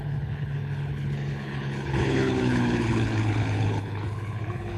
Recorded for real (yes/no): no